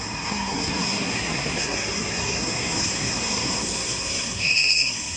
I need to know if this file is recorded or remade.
remade